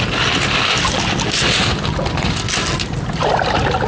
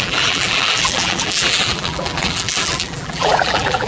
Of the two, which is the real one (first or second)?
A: first